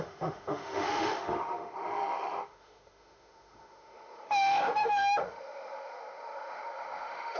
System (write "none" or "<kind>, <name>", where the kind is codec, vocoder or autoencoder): autoencoder, DAC-VAE